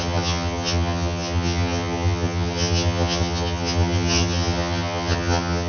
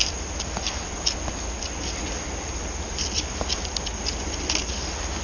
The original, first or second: second